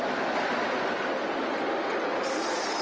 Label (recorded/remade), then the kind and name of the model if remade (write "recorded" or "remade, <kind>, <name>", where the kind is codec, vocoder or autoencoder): recorded